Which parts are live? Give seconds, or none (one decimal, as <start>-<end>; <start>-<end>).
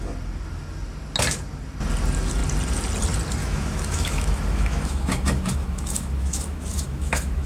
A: 0.0-3.4